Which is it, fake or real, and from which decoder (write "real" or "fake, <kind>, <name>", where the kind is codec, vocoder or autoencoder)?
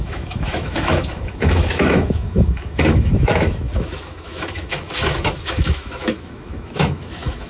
fake, autoencoder, DAC-VAE